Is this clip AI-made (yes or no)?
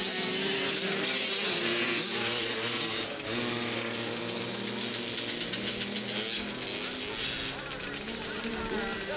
no